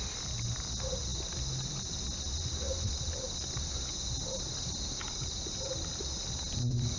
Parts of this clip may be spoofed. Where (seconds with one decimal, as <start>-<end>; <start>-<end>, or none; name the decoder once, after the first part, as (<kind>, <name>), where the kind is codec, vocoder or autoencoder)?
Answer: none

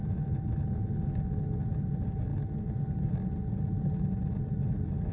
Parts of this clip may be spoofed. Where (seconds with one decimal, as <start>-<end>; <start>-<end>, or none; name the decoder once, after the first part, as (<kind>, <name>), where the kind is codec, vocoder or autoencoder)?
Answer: none

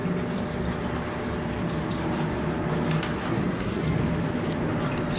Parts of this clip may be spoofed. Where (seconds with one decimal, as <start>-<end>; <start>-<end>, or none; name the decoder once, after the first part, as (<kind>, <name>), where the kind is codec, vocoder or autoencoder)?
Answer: 3.2-4.0 (codec, SNAC)

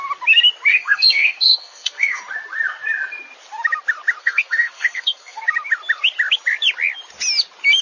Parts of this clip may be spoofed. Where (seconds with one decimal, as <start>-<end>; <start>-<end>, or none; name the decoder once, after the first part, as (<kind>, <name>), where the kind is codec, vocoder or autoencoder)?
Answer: 0.7-2.2 (codec, SNAC); 4.2-5.4

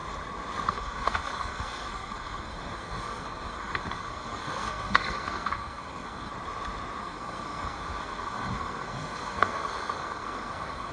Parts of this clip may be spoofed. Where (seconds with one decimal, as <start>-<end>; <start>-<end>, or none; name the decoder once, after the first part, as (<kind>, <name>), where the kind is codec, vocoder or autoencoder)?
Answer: 0.7-6.3 (codec, SNAC); 7.0-10.9